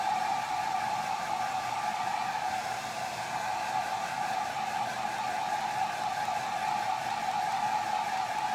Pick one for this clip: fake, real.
real